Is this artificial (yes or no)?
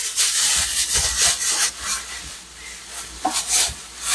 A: no